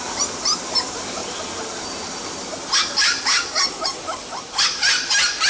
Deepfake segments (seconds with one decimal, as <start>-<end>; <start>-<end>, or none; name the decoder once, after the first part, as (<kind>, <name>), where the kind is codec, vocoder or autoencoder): none